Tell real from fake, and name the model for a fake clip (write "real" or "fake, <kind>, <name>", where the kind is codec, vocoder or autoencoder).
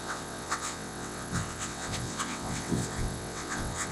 fake, vocoder, WaveNeXt